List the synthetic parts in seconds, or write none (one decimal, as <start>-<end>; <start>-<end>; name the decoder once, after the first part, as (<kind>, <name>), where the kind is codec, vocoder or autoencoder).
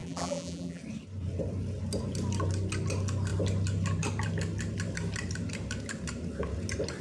0.0-0.8 (vocoder, BigVGAN v2)